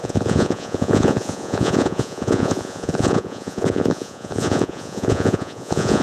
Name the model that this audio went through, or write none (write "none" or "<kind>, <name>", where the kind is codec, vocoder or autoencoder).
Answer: vocoder, Vocos